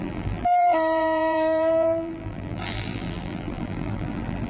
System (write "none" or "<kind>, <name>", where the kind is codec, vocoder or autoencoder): vocoder, BigVGAN v2